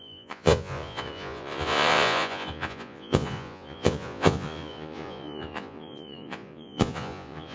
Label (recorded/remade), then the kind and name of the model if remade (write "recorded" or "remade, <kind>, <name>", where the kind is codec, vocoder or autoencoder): remade, vocoder, Vocos